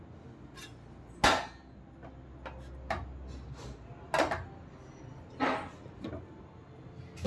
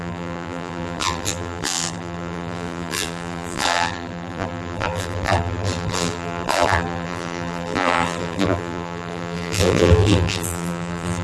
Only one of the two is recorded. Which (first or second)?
first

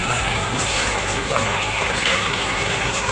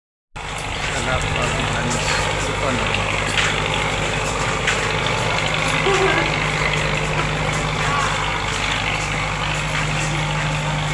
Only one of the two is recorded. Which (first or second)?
second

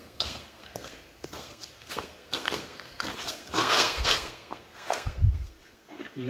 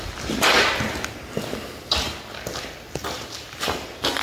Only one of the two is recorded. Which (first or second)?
second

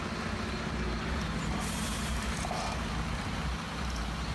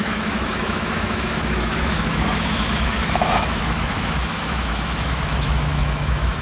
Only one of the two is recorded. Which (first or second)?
first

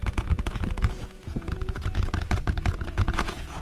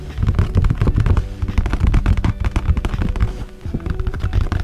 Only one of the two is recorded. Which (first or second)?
second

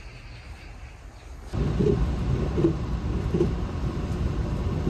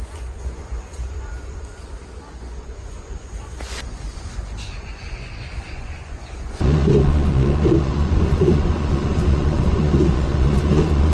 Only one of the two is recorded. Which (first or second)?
first